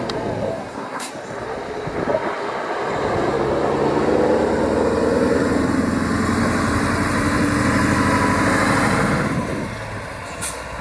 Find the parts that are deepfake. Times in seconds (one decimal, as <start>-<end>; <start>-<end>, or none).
0.5-1.1